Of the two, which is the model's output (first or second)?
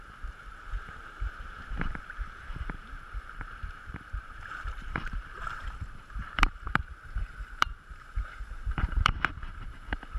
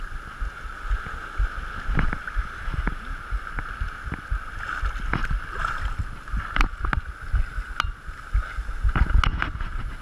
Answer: first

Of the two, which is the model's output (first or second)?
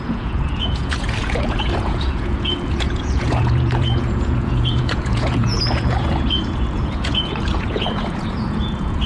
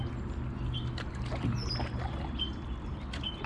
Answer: first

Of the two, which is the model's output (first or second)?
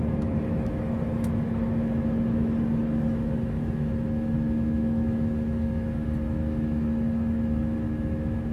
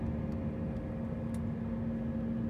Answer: first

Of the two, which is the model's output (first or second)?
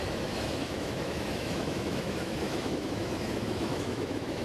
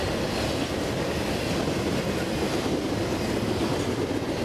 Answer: first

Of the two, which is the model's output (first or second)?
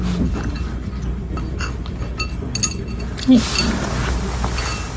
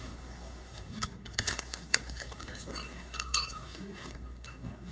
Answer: second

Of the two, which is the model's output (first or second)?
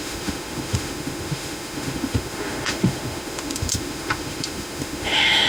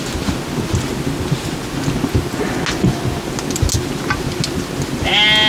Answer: first